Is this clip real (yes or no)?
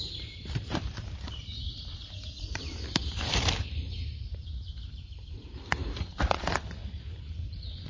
no